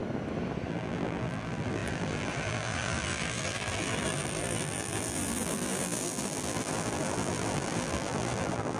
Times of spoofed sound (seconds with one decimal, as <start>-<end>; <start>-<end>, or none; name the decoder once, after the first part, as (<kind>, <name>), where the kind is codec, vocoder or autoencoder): 0.7-8.8 (vocoder, BigVGAN v2)